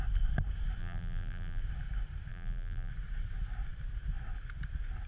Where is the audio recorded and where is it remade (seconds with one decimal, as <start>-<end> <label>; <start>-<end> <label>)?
0.0-0.8 recorded; 0.8-1.6 remade; 1.6-2.3 recorded; 2.3-2.9 remade; 2.9-5.1 recorded